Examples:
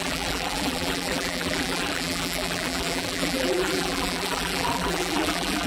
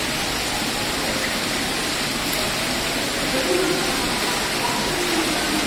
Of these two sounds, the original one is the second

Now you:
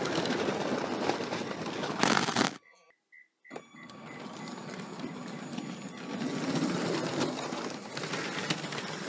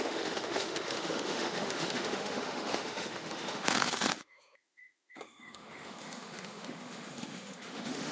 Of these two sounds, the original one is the first